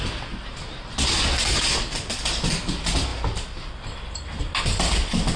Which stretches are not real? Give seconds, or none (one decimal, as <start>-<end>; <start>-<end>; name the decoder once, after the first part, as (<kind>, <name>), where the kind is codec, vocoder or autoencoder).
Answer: none